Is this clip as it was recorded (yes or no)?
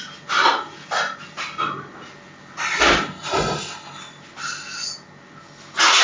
yes